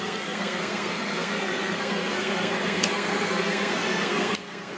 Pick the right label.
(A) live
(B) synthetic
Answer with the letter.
B